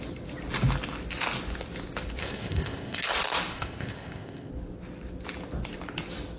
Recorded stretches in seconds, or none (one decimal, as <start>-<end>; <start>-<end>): 0.0-2.2; 3.0-3.5; 4.5-6.4